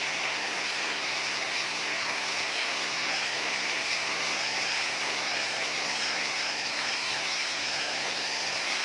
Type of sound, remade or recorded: remade